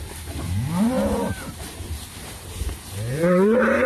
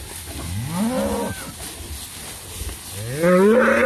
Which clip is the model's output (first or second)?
first